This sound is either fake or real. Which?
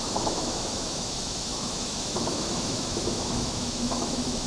fake